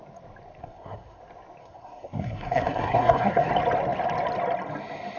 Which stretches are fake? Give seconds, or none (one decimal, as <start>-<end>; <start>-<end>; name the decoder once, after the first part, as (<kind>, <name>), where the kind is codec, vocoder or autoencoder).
0.6-1.2 (codec, SNAC); 1.6-3.5